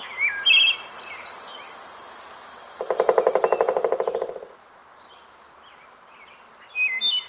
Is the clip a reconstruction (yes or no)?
no